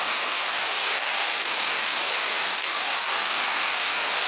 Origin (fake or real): fake